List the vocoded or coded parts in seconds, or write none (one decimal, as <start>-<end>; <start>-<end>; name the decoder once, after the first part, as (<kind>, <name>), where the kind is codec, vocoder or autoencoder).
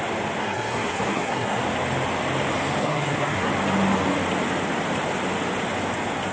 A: 0.4-1.6 (codec, SNAC); 2.8-3.5